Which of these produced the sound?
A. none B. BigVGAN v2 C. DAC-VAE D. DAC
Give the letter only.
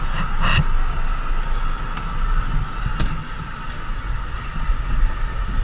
A